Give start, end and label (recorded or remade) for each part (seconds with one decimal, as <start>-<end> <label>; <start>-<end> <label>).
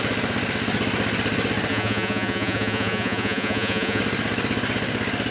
0.0-1.7 recorded; 1.7-4.0 remade; 4.0-5.3 recorded